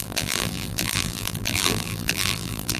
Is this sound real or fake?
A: fake